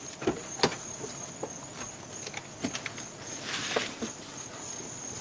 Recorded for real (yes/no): yes